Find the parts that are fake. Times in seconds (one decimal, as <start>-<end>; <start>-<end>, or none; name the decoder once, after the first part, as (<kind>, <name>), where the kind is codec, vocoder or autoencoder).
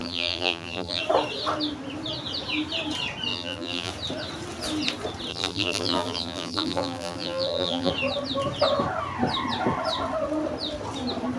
0.0-1.0 (vocoder, BigVGAN v2); 3.3-3.9; 5.3-7.9